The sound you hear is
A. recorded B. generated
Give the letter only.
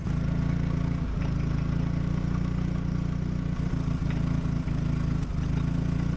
A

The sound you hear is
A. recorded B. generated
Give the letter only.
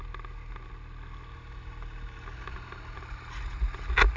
A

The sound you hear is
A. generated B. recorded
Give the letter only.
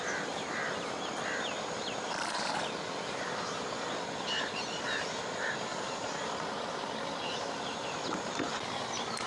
B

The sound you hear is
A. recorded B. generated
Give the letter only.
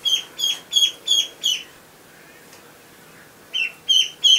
A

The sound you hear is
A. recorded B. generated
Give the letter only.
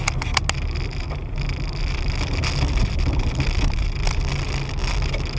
A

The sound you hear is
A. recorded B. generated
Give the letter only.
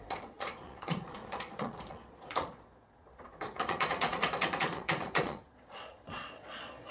B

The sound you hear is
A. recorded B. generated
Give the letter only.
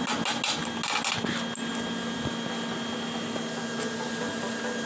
A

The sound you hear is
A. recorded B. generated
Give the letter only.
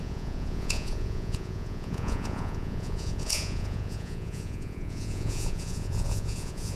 B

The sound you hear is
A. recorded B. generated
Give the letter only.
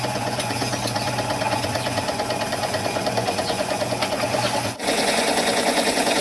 B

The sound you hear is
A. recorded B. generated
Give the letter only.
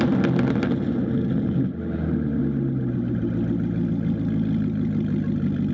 A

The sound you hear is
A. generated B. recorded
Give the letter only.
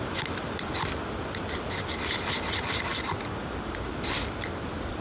B